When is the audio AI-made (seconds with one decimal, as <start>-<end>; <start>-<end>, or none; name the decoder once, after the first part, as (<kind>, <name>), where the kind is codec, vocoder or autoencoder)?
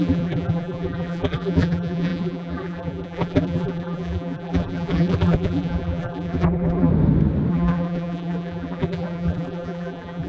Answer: 0.0-6.9 (vocoder, BigVGAN v2); 7.5-10.3